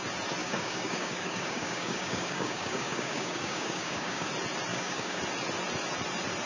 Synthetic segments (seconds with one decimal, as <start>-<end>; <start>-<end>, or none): 0.4-4.3; 4.7-5.2